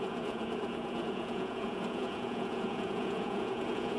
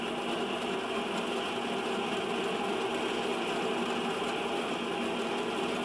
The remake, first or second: first